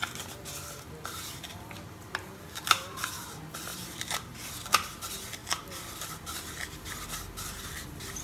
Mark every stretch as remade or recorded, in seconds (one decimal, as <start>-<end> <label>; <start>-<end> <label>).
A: 0.0-3.7 recorded; 3.7-4.5 remade; 4.5-8.2 recorded